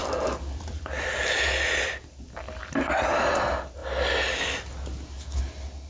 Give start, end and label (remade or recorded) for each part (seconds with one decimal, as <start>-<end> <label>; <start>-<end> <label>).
0.0-5.9 recorded